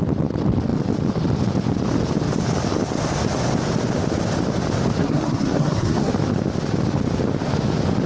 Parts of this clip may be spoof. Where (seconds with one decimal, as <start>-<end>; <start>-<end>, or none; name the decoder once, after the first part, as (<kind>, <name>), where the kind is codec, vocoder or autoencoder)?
5.0-6.1 (codec, SNAC)